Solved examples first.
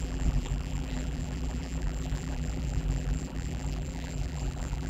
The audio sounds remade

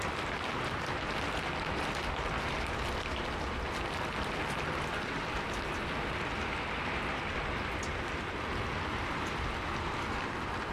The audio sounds remade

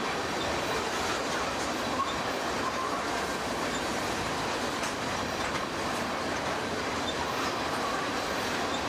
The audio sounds remade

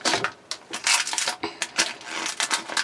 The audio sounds recorded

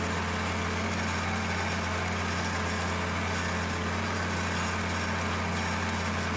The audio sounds recorded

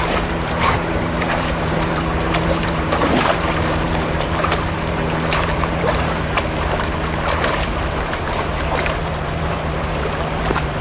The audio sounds remade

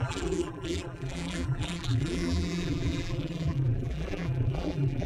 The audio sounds remade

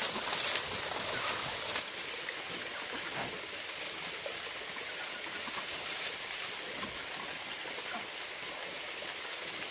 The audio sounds recorded